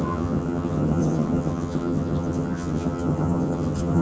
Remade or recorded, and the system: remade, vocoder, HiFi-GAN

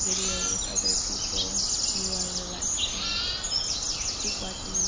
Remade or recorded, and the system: recorded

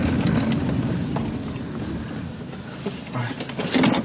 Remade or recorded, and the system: recorded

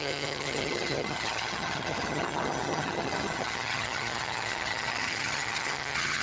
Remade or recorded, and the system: remade, vocoder, HiFi-GAN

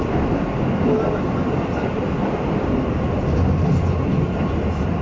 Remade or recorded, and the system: recorded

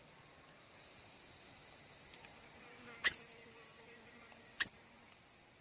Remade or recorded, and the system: recorded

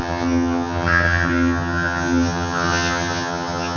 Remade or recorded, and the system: remade, vocoder, HiFi-GAN